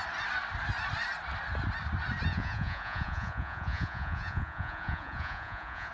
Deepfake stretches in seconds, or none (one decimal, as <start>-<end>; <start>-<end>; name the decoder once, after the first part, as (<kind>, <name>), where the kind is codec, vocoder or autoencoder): 2.3-5.9 (vocoder, Vocos)